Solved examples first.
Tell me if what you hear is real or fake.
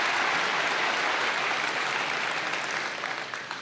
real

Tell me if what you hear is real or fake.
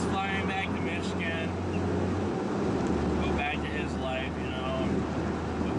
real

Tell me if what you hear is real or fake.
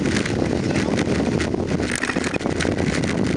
real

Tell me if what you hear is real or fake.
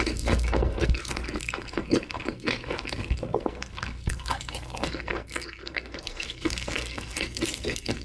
fake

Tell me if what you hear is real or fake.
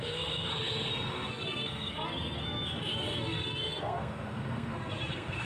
fake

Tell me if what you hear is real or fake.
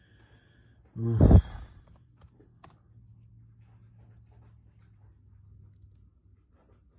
real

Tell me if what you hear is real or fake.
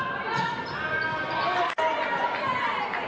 real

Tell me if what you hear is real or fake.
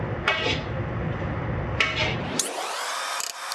real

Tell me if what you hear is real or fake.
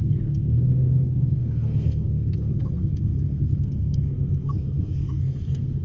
fake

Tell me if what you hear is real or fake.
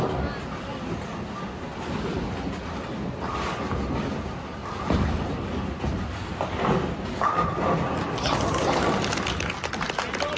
real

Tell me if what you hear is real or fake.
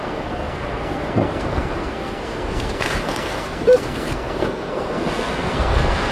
fake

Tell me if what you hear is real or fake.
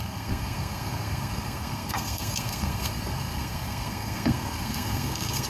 fake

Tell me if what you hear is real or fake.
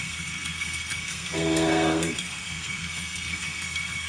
fake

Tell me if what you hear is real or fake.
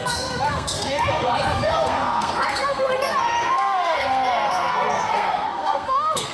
fake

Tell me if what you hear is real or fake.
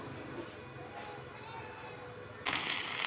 real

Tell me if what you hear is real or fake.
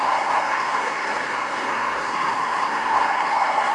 fake